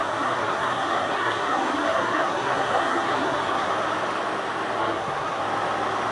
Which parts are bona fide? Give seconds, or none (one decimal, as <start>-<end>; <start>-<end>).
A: 3.7-4.8; 5.4-6.1